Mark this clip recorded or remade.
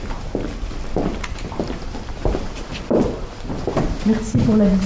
recorded